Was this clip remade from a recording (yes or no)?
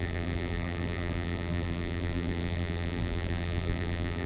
yes